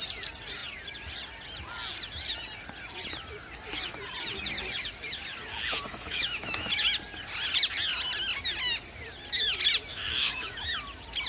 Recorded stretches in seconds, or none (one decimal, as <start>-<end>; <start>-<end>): 0.0-5.9; 6.7-9.9; 10.6-11.3